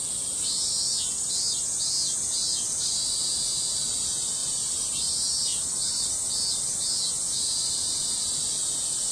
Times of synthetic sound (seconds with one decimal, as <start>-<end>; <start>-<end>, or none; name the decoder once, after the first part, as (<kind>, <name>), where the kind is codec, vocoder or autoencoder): 4.4-5.1 (vocoder, BigVGAN v2); 5.5-6.1